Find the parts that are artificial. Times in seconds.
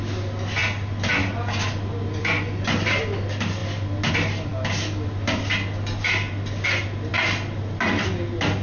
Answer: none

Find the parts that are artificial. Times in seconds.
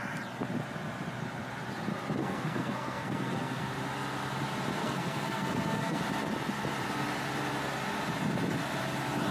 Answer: 2.2-3.7 (codec, SNAC); 4.8-6.0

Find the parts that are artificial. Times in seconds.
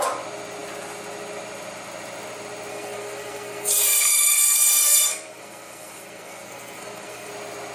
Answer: 2.7-7.3 (codec, SNAC)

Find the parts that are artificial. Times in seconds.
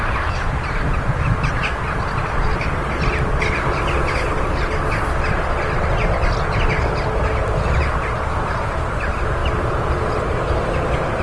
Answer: none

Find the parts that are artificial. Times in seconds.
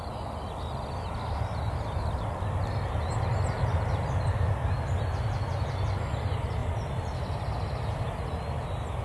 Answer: none